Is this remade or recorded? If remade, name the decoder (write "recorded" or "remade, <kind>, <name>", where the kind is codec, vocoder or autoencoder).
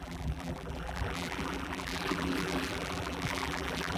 remade, vocoder, BigVGAN v2